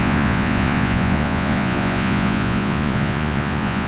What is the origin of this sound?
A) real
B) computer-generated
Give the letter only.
B